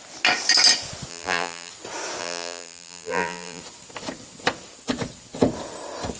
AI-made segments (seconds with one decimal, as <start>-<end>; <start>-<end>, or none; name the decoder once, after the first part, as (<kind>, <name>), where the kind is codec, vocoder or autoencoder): 1.1-1.7 (vocoder, BigVGAN v2); 2.2-3.6